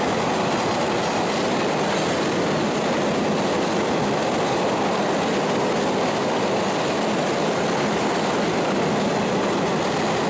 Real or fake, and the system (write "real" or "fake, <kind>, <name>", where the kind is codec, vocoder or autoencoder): real